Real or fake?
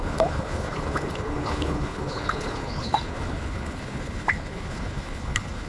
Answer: fake